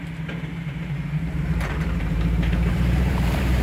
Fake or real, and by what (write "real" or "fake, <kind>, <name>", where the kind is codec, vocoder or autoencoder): fake, vocoder, BigVGAN v2